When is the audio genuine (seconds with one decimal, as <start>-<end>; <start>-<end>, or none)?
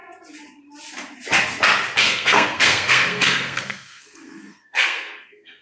0.0-2.0